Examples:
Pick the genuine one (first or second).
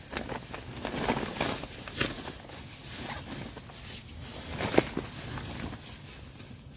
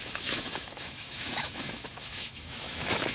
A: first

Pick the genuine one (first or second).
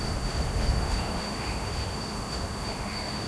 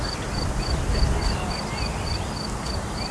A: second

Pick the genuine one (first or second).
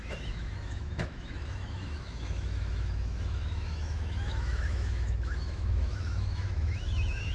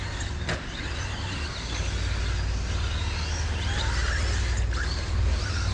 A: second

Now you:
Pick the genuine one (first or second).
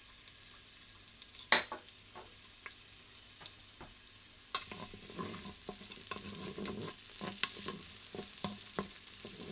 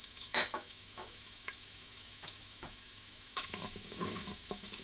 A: first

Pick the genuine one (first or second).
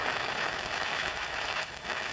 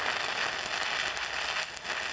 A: second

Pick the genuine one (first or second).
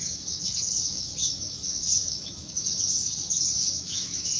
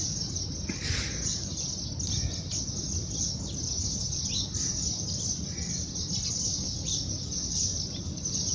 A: second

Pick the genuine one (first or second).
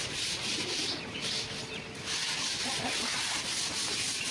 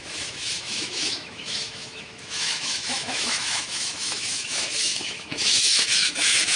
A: first